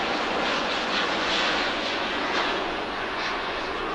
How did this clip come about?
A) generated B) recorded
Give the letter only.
A